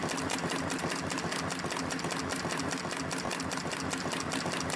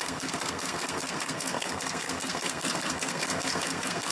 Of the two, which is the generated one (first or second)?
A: second